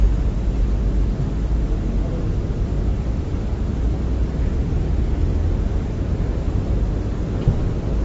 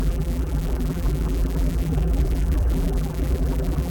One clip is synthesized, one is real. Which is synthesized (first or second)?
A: second